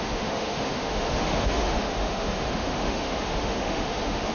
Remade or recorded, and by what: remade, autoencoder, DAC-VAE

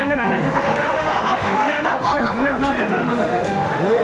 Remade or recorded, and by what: remade, autoencoder, DAC-VAE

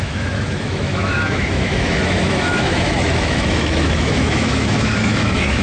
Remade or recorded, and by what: remade, autoencoder, DAC-VAE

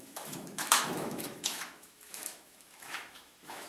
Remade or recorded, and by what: remade, autoencoder, DAC-VAE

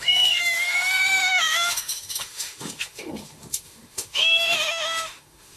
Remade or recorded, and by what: remade, autoencoder, DAC-VAE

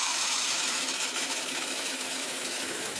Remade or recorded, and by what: remade, autoencoder, DAC-VAE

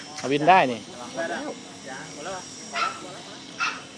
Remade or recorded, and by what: recorded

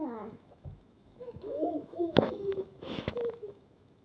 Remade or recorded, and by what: remade, autoencoder, DAC-VAE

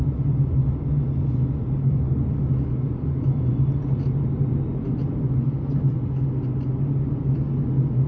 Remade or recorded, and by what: recorded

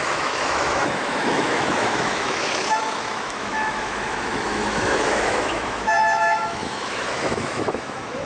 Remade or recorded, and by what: remade, autoencoder, DAC-VAE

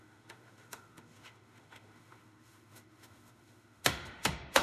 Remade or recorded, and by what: remade, autoencoder, DAC-VAE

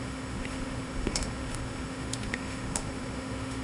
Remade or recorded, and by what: remade, autoencoder, DAC-VAE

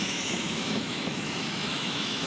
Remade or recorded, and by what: remade, autoencoder, DAC-VAE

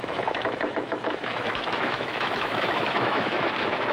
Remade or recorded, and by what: remade, autoencoder, DAC-VAE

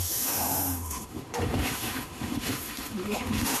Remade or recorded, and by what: remade, autoencoder, DAC-VAE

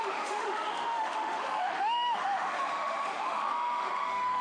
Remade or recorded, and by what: remade, autoencoder, DAC-VAE